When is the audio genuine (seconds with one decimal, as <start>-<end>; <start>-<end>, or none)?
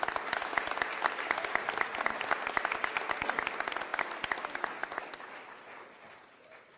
0.0-6.8